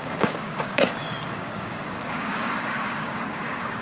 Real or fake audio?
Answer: fake